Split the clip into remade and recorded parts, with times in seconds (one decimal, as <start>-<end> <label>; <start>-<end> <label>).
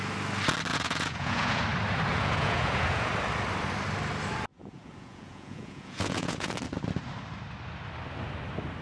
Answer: 0.0-0.7 recorded; 0.7-1.6 remade; 1.6-2.1 recorded; 2.1-3.1 remade; 3.1-4.5 recorded; 4.5-6.5 remade; 6.5-8.8 recorded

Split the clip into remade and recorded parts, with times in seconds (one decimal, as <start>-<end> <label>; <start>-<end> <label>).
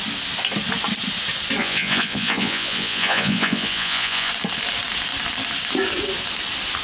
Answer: 0.0-1.6 recorded; 1.6-4.3 remade; 4.3-6.8 recorded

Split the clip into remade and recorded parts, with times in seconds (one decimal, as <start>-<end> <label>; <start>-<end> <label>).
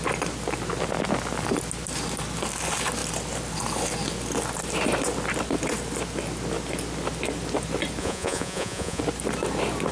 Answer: 0.0-8.0 recorded; 8.0-9.0 remade; 9.0-9.9 recorded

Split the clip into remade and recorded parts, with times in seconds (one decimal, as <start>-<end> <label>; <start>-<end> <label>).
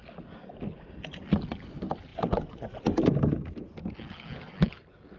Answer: 0.0-2.1 recorded; 2.1-2.8 remade; 2.8-5.2 recorded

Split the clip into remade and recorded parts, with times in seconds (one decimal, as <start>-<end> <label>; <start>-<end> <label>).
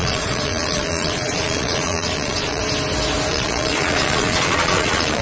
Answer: 0.0-2.6 remade; 2.6-3.3 recorded; 3.3-5.2 remade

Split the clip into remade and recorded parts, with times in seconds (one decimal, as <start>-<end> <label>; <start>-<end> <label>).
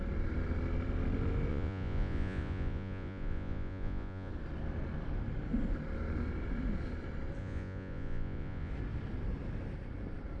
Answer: 0.0-1.5 recorded; 1.5-4.3 remade; 4.3-7.4 recorded; 7.4-8.7 remade; 8.7-10.4 recorded